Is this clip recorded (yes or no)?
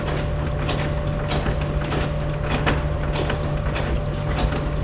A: yes